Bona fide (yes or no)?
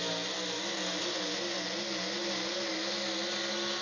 yes